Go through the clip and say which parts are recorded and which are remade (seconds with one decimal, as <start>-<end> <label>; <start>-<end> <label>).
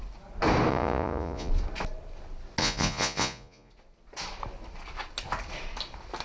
0.0-0.7 recorded; 0.7-1.5 remade; 1.5-2.6 recorded; 2.6-3.7 remade; 3.7-6.2 recorded